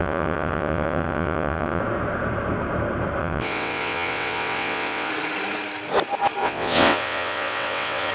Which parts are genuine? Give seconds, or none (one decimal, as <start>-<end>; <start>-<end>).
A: 1.8-3.2; 5.1-6.4